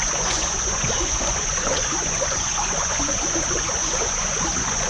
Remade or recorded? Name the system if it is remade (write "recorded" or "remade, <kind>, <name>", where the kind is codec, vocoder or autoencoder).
remade, vocoder, Vocos